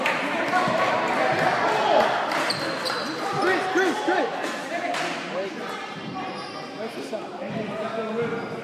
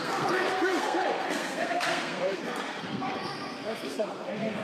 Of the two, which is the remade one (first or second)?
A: second